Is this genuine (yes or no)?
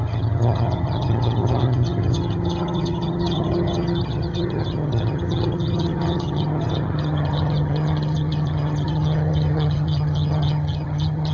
no